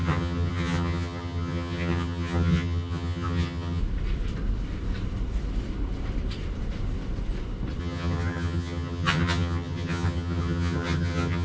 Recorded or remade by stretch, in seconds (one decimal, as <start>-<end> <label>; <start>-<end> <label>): 0.0-3.8 remade; 3.8-7.8 recorded; 7.8-11.4 remade